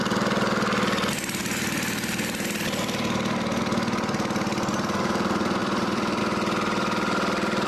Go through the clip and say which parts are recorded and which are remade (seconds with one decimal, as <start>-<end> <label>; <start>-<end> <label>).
0.0-1.4 recorded; 1.4-3.6 remade; 3.6-5.6 recorded; 5.6-6.2 remade; 6.2-7.7 recorded